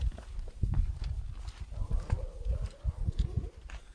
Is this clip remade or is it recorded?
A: recorded